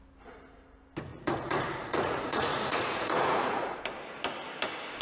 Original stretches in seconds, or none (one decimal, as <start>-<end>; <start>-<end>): 0.0-1.1; 3.8-5.0